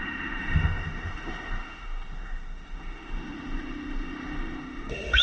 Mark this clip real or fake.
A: fake